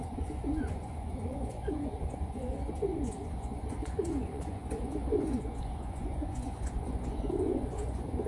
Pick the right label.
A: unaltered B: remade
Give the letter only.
B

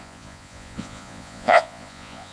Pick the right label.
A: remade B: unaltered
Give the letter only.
A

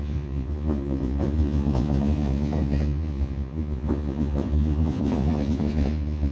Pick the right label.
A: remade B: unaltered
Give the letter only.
A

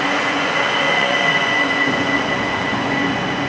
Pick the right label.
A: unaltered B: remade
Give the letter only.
B